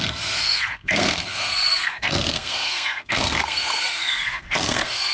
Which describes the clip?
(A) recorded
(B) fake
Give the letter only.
B